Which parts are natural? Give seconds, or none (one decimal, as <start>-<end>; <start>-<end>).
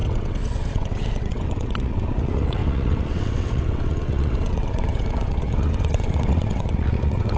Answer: none